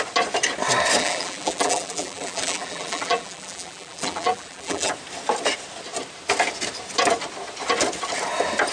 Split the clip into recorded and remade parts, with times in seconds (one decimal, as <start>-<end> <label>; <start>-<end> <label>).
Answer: 0.0-1.0 recorded; 1.0-4.9 remade; 4.9-8.7 recorded